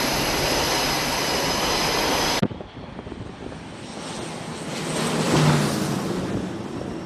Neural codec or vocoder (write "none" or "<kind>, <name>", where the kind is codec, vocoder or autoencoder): none